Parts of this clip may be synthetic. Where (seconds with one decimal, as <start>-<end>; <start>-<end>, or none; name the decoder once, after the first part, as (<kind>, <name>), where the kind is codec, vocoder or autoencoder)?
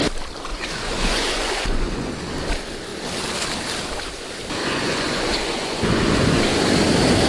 0.5-2.1 (vocoder, Vocos); 4.6-6.4